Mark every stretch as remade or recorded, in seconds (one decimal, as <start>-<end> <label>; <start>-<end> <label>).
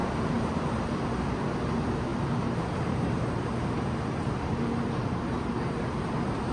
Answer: 0.0-0.8 remade; 0.8-2.1 recorded; 2.1-3.5 remade; 3.5-6.5 recorded